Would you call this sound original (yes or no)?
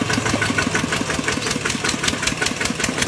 yes